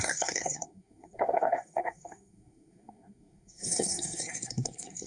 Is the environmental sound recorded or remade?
remade